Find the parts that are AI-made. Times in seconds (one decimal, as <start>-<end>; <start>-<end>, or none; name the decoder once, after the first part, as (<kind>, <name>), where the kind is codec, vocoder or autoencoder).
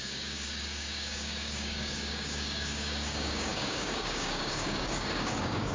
0.0-5.7 (codec, DAC)